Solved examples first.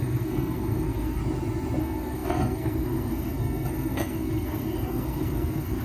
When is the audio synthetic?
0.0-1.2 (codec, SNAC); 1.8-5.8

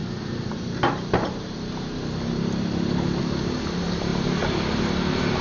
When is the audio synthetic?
none

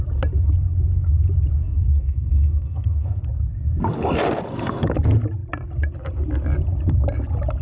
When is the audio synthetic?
1.6-3.2 (codec, SNAC)

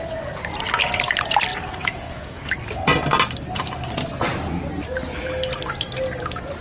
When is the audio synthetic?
1.5-2.5 (vocoder, Vocos)

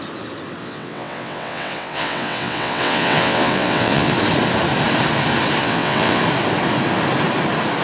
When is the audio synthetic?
0.6-4.1 (vocoder, WaveNeXt); 5.6-6.2

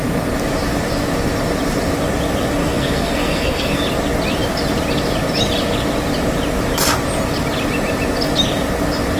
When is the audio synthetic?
2.6-3.8 (codec, SNAC)

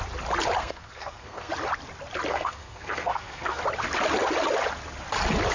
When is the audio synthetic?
0.6-1.5 (codec, SNAC); 2.3-3.6